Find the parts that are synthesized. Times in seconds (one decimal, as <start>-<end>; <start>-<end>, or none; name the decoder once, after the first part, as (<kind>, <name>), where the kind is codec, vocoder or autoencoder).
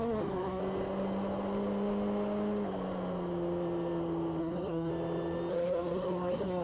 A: 0.0-0.6 (codec, SNAC); 4.4-4.9; 5.5-6.6